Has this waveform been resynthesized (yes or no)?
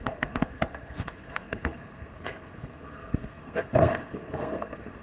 yes